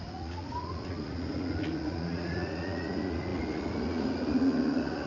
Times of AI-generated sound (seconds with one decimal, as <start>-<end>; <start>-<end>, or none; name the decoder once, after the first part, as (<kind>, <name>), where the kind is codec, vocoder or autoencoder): 0.0-5.1 (vocoder, Vocos)